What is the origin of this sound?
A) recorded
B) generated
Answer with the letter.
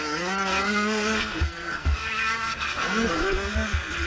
B